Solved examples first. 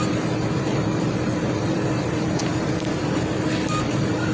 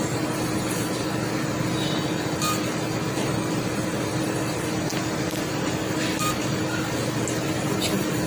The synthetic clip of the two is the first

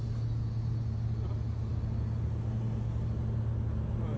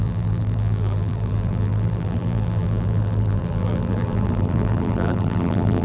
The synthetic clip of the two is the second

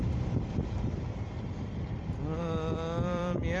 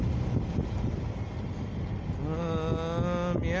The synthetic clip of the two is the first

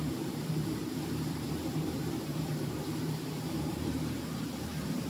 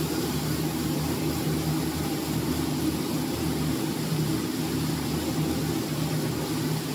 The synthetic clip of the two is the first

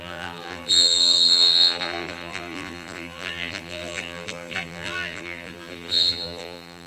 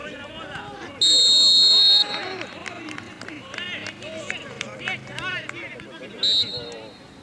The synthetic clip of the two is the first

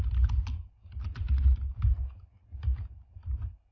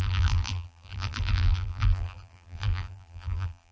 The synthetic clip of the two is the second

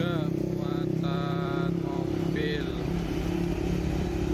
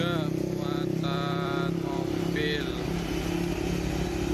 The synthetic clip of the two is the first